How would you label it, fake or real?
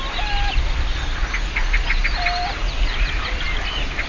real